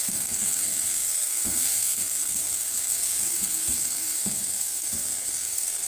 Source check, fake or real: fake